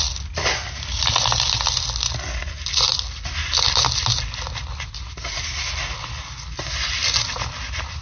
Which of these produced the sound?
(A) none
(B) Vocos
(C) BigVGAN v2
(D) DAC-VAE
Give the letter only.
A